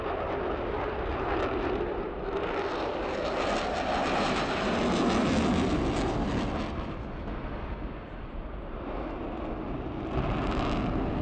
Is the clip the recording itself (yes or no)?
yes